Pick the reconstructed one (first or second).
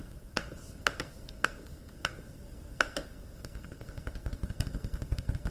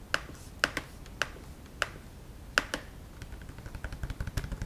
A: first